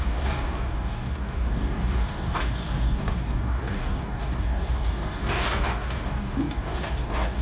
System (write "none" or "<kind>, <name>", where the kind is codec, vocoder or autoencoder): codec, DAC